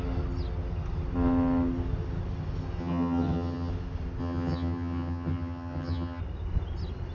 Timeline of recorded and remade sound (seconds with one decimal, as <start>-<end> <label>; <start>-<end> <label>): 0.0-2.8 recorded; 2.8-3.7 remade; 3.7-4.2 recorded; 4.2-6.2 remade; 6.2-7.1 recorded